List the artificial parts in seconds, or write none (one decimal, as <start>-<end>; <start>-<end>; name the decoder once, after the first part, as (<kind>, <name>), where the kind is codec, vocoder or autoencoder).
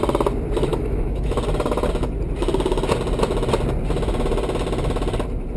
0.7-1.4 (autoencoder, DAC-VAE)